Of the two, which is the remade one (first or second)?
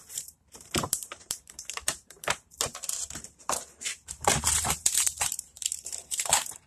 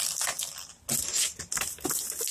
first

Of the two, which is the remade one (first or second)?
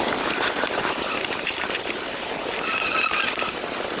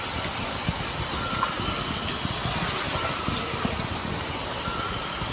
first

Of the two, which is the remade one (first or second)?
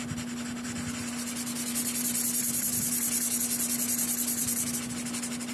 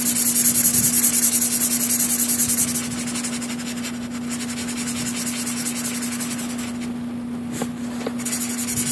first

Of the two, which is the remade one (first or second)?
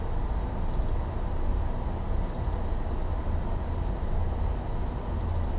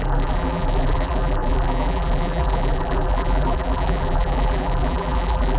second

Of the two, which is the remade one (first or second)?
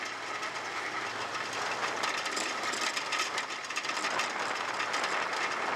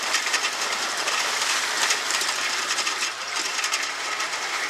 second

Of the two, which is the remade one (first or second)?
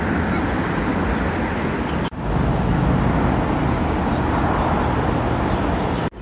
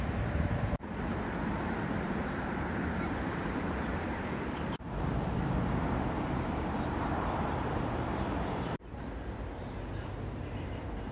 second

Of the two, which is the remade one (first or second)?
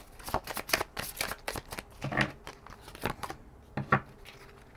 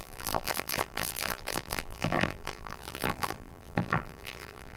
second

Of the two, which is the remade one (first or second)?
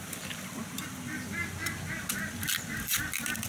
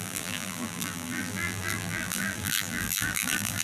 second